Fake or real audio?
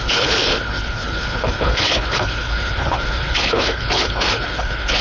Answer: fake